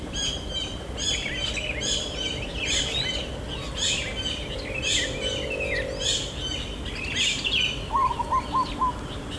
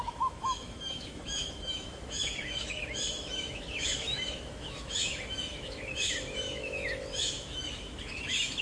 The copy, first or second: second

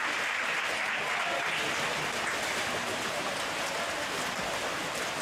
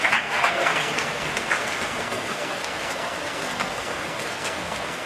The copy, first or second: second